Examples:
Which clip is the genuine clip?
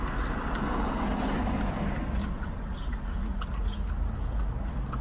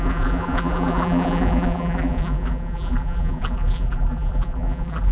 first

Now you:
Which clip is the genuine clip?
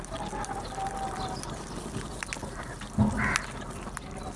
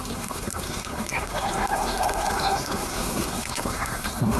first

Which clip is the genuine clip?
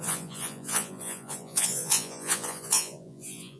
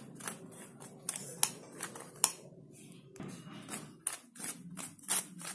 second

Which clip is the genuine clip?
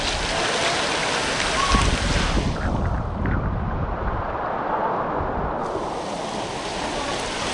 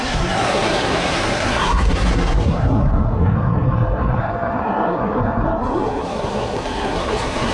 first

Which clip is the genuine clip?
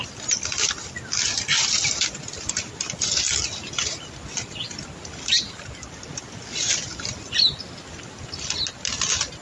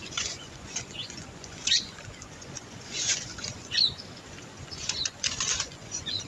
first